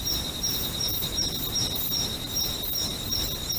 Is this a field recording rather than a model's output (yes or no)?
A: no